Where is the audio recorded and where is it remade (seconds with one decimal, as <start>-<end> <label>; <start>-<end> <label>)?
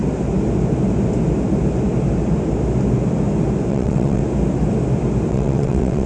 0.0-3.7 recorded; 3.7-4.2 remade; 4.2-5.3 recorded; 5.3-6.1 remade